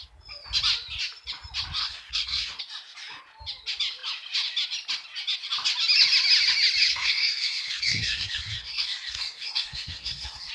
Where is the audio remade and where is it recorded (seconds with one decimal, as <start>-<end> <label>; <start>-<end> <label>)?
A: 0.0-1.8 recorded; 1.8-2.6 remade; 2.6-6.9 recorded; 6.9-10.5 remade